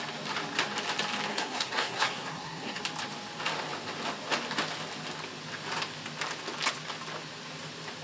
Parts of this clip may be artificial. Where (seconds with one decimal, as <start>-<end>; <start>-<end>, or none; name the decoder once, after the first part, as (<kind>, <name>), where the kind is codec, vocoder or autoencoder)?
1.3-2.8 (codec, SNAC)